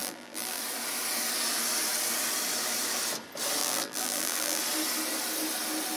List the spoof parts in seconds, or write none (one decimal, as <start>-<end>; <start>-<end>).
0.0-0.6; 3.6-4.6